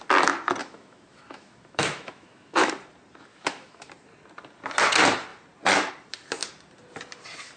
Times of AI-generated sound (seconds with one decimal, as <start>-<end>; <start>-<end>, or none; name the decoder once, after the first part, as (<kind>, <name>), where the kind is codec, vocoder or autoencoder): 0.6-2.7 (autoencoder, DAC-VAE); 3.3-3.9